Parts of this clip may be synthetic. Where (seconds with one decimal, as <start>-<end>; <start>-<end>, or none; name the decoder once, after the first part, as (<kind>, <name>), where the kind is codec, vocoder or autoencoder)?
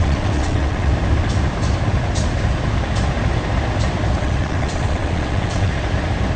0.0-0.9 (vocoder, WaveNeXt); 4.2-5.7